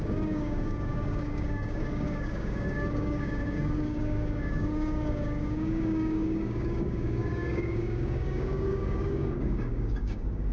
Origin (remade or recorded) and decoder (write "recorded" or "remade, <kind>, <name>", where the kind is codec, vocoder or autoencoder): remade, codec, DAC